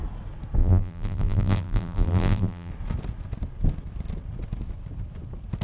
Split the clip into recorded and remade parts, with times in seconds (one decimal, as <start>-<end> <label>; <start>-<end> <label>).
0.0-0.6 recorded; 0.6-2.7 remade; 2.7-5.6 recorded